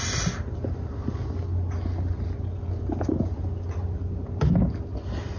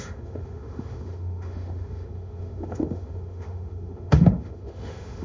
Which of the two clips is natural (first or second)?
first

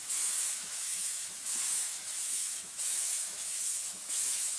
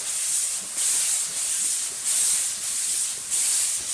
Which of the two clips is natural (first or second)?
second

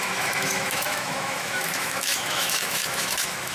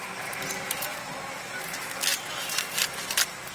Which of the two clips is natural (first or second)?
second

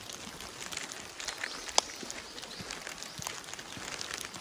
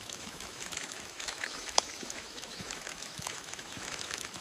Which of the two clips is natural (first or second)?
first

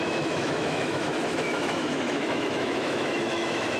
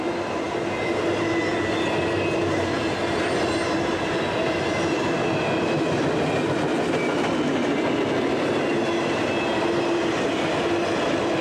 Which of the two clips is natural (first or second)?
second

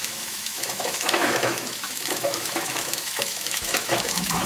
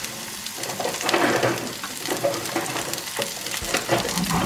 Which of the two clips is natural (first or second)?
second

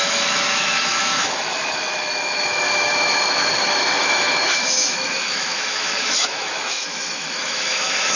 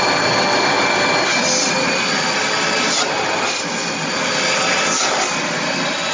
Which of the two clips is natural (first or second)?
second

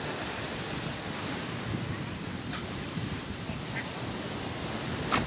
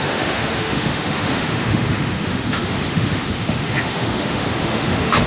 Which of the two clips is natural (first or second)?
first